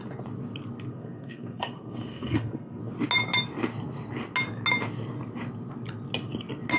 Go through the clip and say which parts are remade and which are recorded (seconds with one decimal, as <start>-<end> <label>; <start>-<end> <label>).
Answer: 0.0-0.9 recorded; 0.9-2.8 remade; 2.8-6.8 recorded